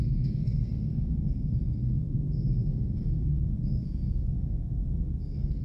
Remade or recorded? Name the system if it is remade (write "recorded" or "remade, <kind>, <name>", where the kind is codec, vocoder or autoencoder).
remade, codec, SNAC